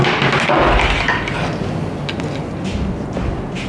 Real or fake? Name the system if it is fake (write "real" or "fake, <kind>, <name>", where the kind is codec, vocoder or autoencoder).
real